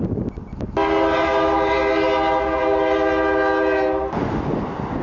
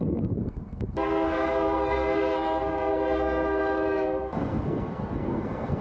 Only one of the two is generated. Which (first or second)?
second